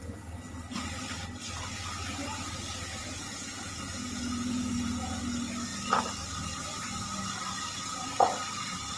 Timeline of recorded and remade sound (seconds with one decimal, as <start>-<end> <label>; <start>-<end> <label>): 0.0-3.0 recorded; 3.0-5.2 remade; 5.2-9.0 recorded